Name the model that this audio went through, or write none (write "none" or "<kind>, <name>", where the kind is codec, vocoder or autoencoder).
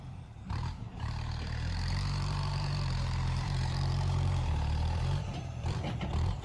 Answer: vocoder, BigVGAN v2